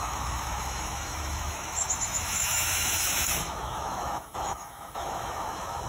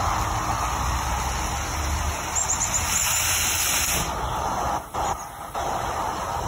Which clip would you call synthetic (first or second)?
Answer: first